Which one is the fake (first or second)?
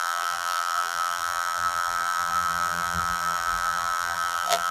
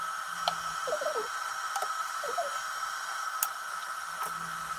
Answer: first